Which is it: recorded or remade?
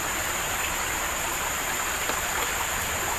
recorded